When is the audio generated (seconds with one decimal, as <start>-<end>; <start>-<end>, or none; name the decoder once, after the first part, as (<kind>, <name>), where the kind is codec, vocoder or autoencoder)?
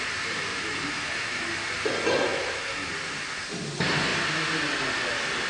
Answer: 0.5-1.5 (autoencoder, DAC-VAE); 2.3-2.9